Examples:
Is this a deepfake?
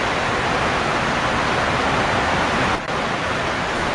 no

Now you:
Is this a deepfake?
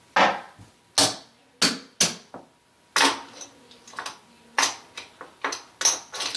no